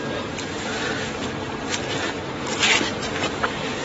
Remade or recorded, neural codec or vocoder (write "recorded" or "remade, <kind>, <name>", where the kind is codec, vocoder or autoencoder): recorded